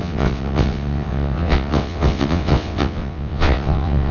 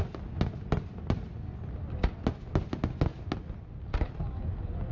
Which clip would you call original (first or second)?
second